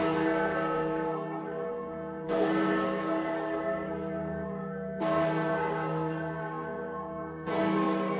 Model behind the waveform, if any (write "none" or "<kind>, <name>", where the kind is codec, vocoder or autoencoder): codec, SNAC